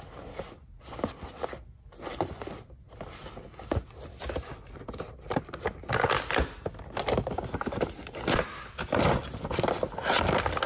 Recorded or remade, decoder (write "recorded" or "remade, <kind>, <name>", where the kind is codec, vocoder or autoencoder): recorded